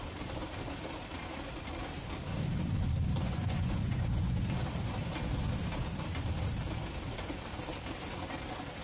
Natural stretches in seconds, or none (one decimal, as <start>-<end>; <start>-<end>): 0.0-3.2; 4.4-8.8